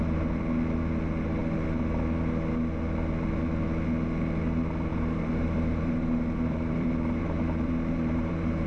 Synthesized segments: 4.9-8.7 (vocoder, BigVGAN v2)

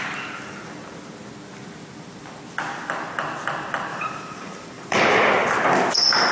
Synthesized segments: 3.9-5.0 (vocoder, BigVGAN v2)

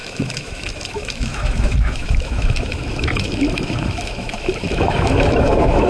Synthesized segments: 0.0-5.9 (autoencoder, DAC-VAE)

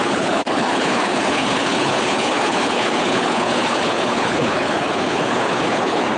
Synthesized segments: 0.0-6.2 (codec, HILCodec)

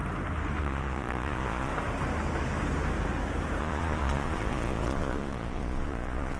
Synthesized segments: 0.6-1.7 (vocoder, Vocos); 3.6-6.4